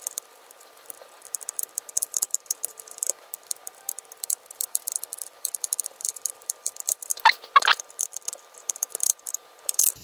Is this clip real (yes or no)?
no